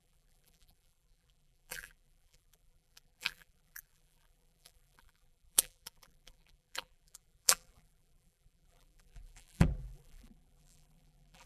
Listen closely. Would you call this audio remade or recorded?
remade